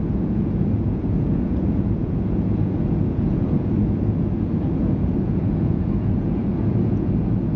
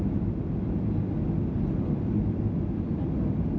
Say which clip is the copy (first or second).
first